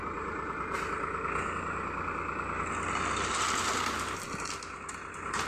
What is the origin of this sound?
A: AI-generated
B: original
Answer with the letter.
B